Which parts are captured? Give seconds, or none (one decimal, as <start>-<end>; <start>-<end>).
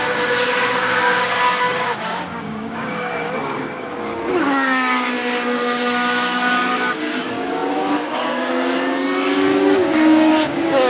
none